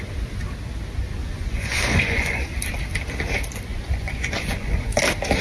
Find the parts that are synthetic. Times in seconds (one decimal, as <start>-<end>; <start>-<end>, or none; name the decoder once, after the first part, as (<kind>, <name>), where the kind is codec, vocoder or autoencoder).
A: 1.2-2.4 (vocoder, Vocos); 3.7-5.0